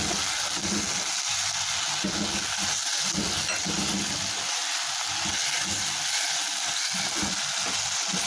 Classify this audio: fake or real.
real